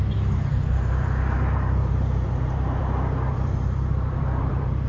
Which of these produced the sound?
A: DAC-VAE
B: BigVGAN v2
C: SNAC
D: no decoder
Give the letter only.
B